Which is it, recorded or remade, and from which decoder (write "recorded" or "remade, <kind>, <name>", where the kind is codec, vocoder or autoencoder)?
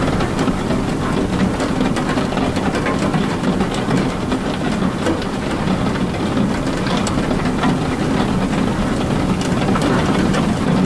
recorded